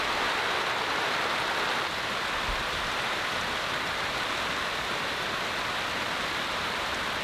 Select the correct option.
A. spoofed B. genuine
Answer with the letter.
A